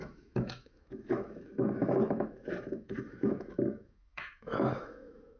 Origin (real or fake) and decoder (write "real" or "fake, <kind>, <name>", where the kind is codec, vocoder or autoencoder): fake, autoencoder, DAC-VAE